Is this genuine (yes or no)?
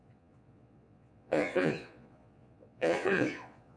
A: no